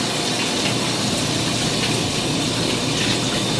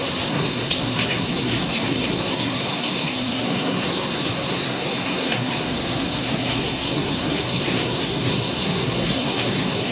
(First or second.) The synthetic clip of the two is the second